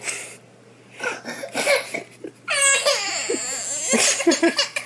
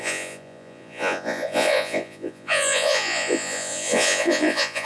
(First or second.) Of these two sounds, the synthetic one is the second